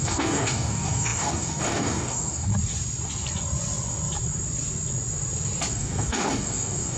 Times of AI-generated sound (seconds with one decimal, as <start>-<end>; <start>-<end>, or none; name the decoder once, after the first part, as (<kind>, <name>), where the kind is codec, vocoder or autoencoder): 0.0-2.5 (codec, DAC); 5.7-7.0